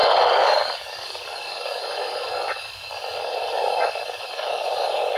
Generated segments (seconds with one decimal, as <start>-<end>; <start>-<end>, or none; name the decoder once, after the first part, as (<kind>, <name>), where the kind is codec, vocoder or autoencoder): 0.0-5.2 (codec, DAC)

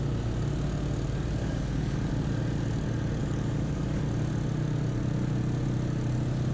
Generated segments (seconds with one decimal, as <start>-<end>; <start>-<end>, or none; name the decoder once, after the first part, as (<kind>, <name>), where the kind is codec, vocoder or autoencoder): 1.4-2.1 (codec, DAC); 3.2-4.0